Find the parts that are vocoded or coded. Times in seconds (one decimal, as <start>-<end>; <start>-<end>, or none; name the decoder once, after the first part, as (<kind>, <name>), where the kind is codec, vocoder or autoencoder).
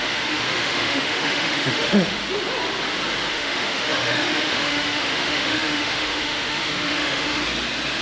0.0-2.2 (autoencoder, DAC-VAE); 3.3-7.4